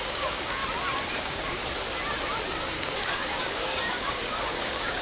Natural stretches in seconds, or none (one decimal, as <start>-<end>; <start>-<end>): 0.6-1.1; 1.6-2.5